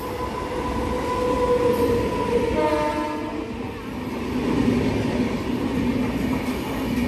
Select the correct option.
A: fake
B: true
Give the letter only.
B